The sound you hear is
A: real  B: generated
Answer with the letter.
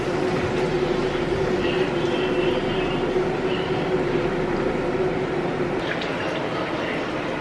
A